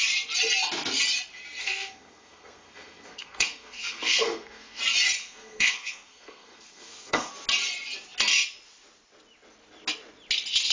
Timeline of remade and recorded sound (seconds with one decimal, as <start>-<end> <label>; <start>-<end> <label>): 0.0-1.6 recorded; 1.6-4.8 remade; 4.8-5.2 recorded; 5.2-7.3 remade; 7.3-10.7 recorded

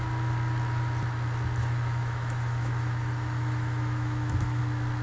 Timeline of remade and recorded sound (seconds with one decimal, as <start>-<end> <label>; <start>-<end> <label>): 0.0-1.6 recorded; 1.6-4.6 remade; 4.6-5.0 recorded

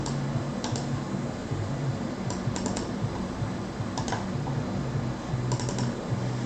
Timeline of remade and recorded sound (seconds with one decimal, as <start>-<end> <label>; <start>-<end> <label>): 0.0-1.4 recorded; 1.4-4.0 remade; 4.0-6.5 recorded

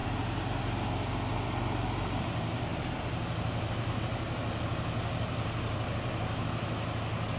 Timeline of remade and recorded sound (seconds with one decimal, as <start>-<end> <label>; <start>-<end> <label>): 0.0-0.6 remade; 0.6-2.7 recorded; 2.7-6.4 remade; 6.4-7.4 recorded

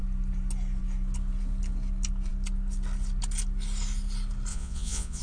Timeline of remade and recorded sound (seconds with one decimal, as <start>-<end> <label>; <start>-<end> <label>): 0.0-4.5 recorded; 4.5-5.2 remade

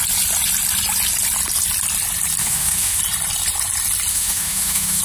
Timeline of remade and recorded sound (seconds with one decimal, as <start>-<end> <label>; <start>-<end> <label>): 0.0-2.4 recorded; 2.4-3.0 remade; 3.0-4.1 recorded; 4.1-5.0 remade

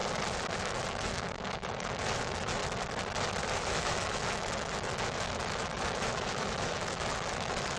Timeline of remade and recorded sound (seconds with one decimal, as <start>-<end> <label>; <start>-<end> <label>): 0.0-0.6 recorded; 0.6-2.6 remade; 2.6-3.5 recorded; 3.5-7.8 remade

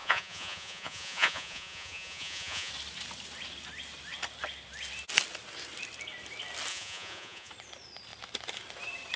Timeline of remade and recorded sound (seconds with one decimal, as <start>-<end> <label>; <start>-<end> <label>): 0.0-2.7 remade; 2.7-6.7 recorded; 6.7-7.5 remade; 7.5-9.2 recorded